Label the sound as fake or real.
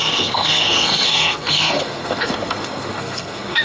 fake